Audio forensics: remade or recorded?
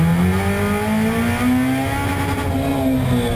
recorded